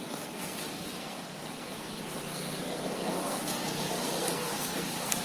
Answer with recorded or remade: remade